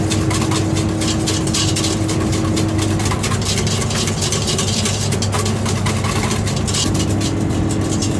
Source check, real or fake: real